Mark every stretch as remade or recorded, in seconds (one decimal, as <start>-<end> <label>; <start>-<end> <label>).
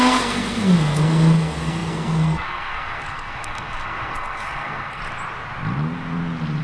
0.0-5.0 remade; 5.0-6.6 recorded